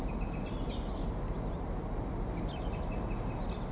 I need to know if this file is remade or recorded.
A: recorded